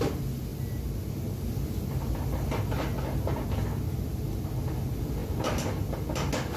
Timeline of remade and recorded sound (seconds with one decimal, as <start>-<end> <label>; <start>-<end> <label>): 0.0-6.6 recorded